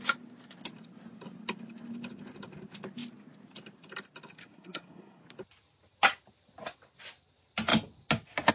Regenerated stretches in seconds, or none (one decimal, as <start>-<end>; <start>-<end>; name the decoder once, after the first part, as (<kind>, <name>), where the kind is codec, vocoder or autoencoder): 4.4-5.2 (codec, SNAC)